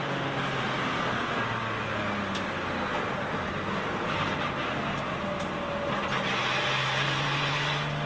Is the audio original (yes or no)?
yes